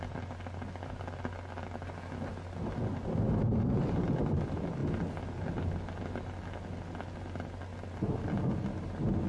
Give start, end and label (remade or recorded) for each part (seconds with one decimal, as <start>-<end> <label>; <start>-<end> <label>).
0.0-9.3 recorded